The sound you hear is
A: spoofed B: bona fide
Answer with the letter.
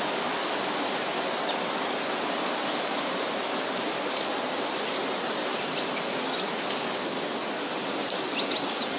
B